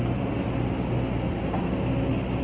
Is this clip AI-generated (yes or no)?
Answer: no